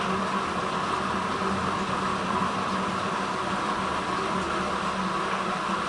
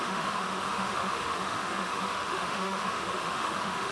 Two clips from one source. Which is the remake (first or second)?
second